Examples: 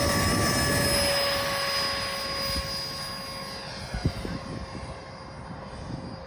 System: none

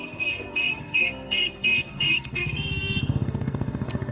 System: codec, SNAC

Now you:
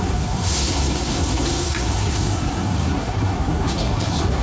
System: codec, SNAC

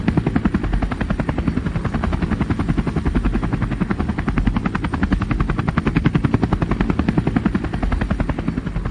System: none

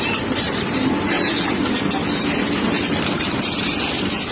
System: none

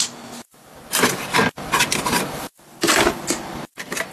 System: none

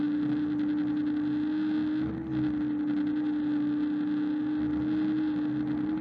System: none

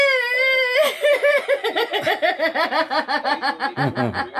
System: none